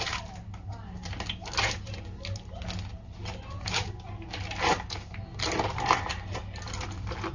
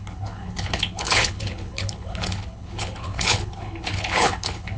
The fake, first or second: second